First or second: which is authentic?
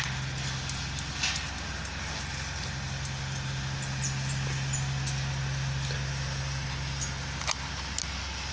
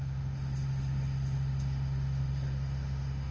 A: first